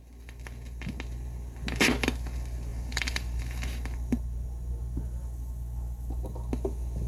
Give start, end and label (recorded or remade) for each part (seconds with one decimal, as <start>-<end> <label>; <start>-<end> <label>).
0.0-2.7 recorded; 2.7-4.7 remade; 4.7-7.1 recorded